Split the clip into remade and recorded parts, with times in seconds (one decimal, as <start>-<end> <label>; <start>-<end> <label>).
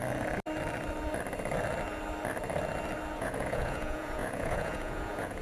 0.0-3.2 recorded; 3.2-5.4 remade